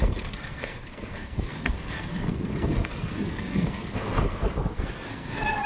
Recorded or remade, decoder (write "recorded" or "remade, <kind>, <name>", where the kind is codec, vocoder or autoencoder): remade, codec, SNAC